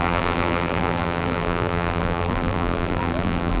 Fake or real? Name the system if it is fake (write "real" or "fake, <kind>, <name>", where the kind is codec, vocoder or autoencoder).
fake, vocoder, BigVGAN v2